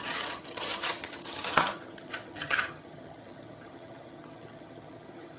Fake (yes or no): yes